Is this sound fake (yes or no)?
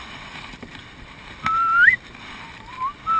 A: no